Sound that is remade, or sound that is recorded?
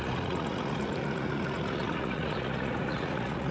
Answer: remade